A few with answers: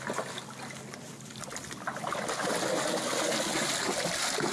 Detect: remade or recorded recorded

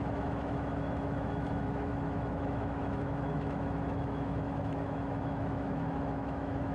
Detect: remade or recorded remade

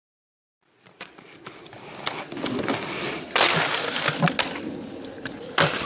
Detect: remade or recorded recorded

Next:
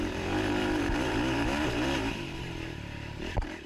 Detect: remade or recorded remade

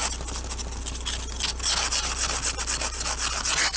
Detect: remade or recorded recorded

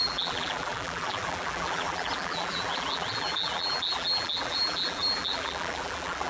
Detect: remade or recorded remade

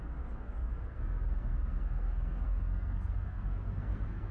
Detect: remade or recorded remade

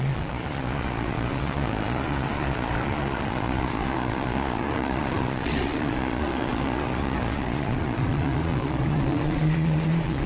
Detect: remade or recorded remade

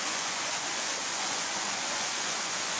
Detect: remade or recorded remade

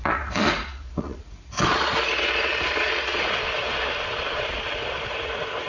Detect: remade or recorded remade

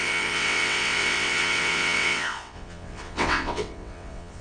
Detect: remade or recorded remade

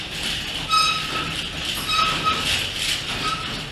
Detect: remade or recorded recorded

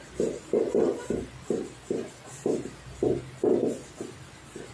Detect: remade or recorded recorded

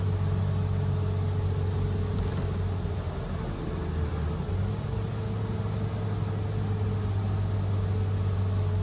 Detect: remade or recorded recorded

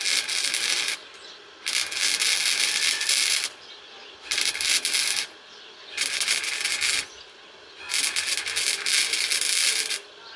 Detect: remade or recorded recorded